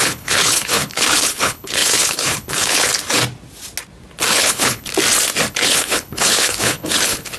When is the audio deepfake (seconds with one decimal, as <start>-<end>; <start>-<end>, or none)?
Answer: 0.0-2.9; 4.3-4.9; 5.5-7.4